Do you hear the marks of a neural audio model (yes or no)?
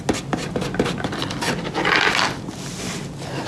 no